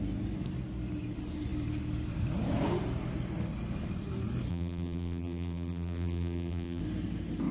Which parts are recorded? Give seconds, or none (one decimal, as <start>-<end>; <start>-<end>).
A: 0.0-4.5; 6.8-7.5